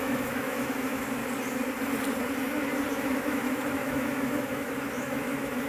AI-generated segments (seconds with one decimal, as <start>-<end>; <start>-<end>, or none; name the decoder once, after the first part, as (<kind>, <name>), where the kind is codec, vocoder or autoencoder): 0.0-1.2 (autoencoder, DAC-VAE); 2.9-5.7